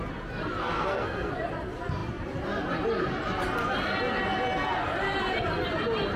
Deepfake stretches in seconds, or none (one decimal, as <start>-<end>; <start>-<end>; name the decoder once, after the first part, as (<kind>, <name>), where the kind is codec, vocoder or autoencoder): 0.6-1.3 (codec, SNAC)